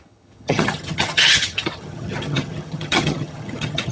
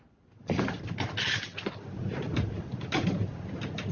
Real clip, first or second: second